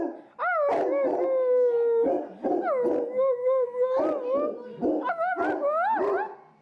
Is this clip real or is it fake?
real